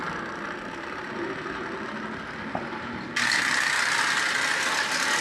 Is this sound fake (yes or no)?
no